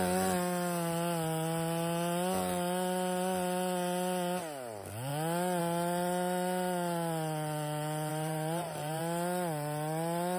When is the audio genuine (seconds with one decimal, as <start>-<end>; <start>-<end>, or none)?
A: 0.0-8.1; 9.0-10.4